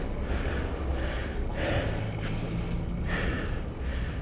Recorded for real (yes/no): yes